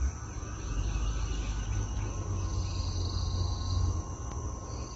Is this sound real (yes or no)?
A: yes